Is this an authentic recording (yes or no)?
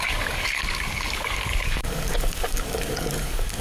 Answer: no